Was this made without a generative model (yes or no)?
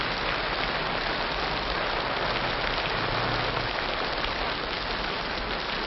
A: yes